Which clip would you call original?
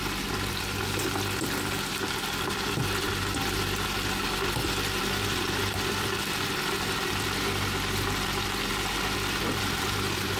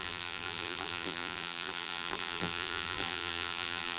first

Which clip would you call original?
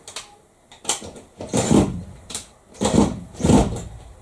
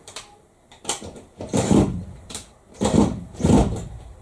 first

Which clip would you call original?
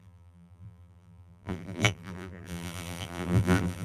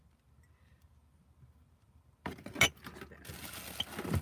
second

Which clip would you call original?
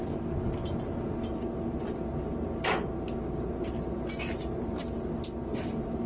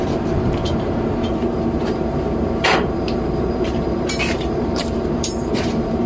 first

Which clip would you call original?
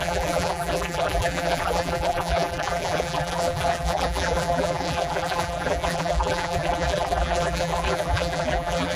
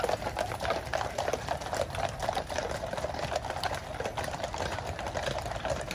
second